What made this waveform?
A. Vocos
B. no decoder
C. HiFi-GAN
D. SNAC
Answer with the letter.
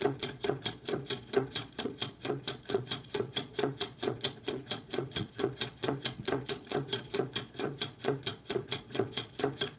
A